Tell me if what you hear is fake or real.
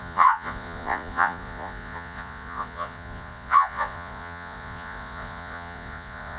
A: fake